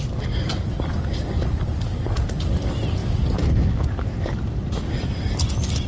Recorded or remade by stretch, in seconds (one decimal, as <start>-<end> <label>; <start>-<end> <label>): 0.0-5.9 recorded